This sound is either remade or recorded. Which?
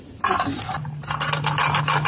recorded